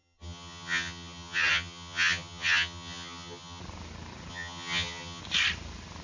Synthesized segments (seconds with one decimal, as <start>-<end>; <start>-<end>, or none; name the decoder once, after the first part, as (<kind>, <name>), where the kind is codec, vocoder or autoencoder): 0.0-3.6 (vocoder, HiFi-GAN); 4.3-5.2